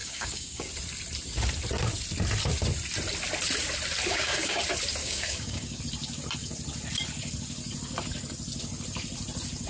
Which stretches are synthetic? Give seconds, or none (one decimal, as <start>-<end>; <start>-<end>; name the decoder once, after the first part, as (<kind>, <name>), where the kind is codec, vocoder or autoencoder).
0.0-0.7 (codec, DAC); 4.1-4.6; 5.0-5.8